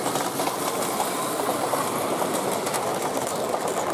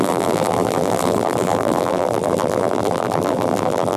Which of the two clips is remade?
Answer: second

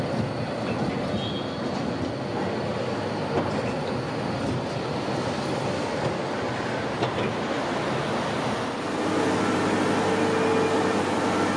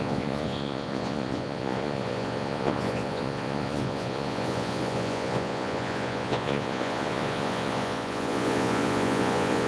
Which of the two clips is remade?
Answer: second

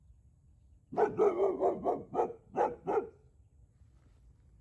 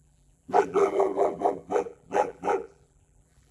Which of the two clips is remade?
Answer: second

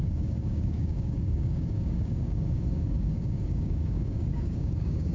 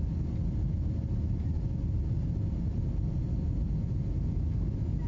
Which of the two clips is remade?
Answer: first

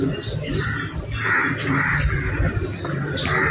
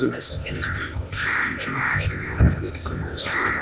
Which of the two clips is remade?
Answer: second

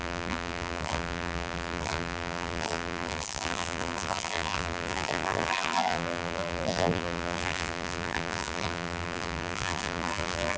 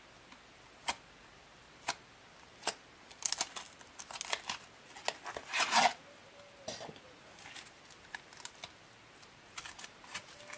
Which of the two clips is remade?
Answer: first